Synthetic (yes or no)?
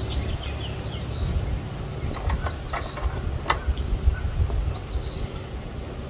no